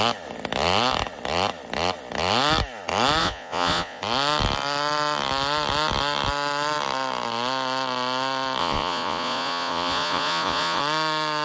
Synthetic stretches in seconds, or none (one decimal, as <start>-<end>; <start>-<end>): 3.2-4.0; 8.6-10.8

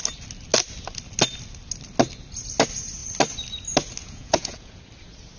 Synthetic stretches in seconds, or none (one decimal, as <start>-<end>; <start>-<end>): 4.0-4.8

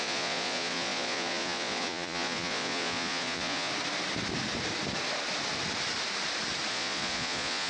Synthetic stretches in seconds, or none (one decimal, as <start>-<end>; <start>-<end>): 0.0-3.7; 6.7-7.7

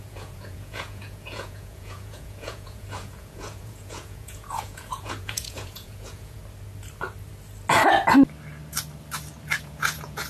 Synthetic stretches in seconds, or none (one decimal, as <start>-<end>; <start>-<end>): 0.0-6.4; 9.6-10.3